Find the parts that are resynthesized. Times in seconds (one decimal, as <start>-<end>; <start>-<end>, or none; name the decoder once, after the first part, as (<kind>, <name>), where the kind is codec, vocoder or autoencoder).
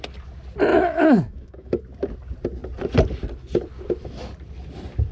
0.7-1.8 (autoencoder, DAC-VAE)